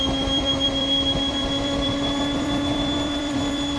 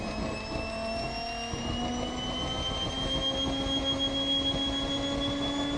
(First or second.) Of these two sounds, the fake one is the first